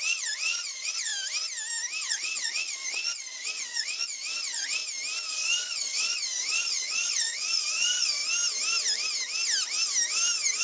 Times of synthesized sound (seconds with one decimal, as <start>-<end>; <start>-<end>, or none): 0.0-1.1; 2.0-4.8; 5.3-8.2